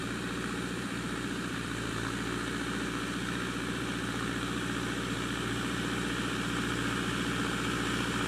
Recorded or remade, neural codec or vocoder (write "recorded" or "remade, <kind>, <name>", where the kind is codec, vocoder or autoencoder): remade, vocoder, BigVGAN v2